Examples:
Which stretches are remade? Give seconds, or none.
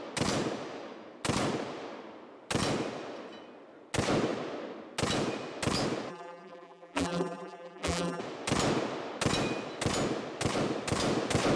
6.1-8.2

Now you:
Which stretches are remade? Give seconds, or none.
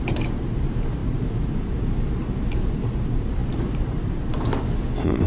0.0-5.3